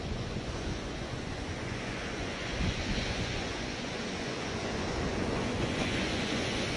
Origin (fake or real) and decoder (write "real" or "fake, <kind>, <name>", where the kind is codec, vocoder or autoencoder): fake, vocoder, Vocos